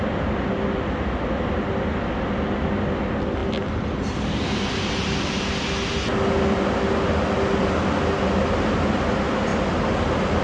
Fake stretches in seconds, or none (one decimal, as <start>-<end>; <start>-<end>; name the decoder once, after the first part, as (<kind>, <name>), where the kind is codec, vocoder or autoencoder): none